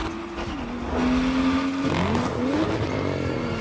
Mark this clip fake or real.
real